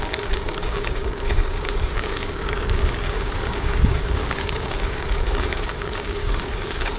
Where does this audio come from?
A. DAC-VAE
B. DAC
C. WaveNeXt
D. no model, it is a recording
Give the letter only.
B